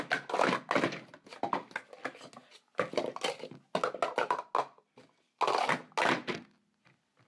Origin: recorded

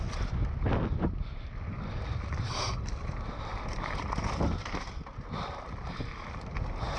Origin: recorded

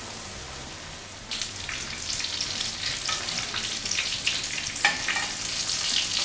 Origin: recorded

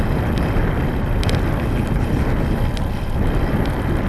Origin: recorded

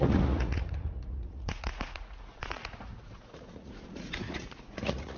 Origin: remade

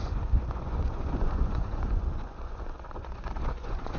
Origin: remade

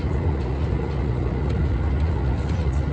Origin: remade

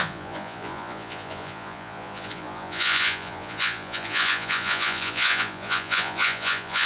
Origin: remade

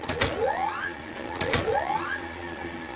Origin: remade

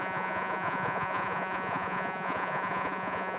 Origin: remade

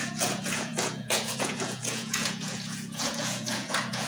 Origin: remade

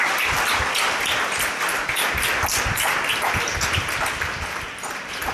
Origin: recorded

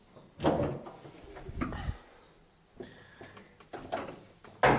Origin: recorded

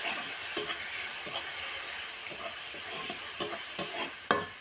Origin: recorded